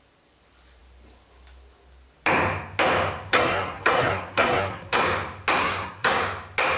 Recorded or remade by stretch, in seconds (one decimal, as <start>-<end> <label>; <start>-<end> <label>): 0.0-3.3 recorded; 3.3-5.0 remade; 5.0-5.6 recorded; 5.6-6.2 remade; 6.2-6.8 recorded